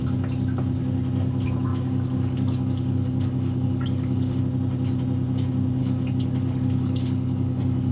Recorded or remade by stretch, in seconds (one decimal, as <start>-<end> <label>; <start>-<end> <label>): 0.0-1.7 recorded; 1.7-4.4 remade; 4.4-5.8 recorded; 5.8-7.9 remade